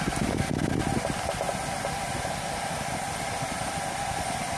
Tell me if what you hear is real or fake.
real